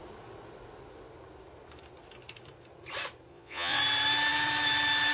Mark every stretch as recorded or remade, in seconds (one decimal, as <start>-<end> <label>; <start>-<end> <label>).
0.0-3.3 recorded; 3.3-3.8 remade; 3.8-5.1 recorded

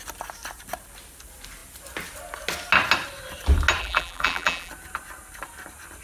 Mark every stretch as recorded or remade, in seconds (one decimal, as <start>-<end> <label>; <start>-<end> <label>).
0.0-3.8 recorded; 3.8-4.7 remade; 4.7-6.0 recorded

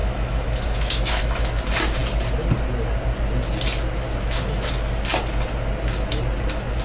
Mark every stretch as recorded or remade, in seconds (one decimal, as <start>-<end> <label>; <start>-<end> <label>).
0.0-1.4 remade; 1.4-6.8 recorded

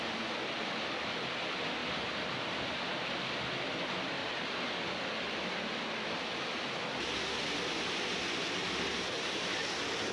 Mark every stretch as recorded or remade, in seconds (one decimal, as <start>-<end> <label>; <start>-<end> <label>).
0.0-10.1 recorded

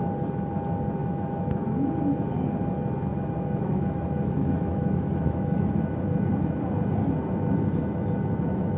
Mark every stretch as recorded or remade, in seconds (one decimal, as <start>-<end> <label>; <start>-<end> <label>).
0.0-1.0 recorded; 1.0-1.9 remade; 1.9-3.1 recorded; 3.1-5.7 remade; 5.7-8.8 recorded

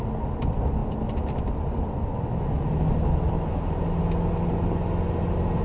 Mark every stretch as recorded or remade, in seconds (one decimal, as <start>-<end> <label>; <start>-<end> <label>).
0.0-5.6 recorded

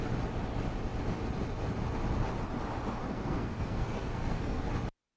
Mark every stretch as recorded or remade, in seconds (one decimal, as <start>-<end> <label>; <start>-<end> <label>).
0.0-3.0 recorded; 3.0-4.7 remade; 4.7-5.2 recorded